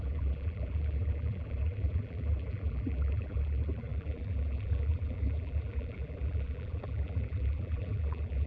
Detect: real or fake fake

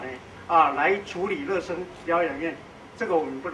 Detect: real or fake real